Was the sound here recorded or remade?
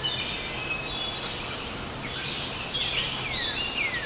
recorded